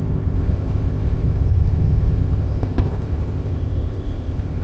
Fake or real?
fake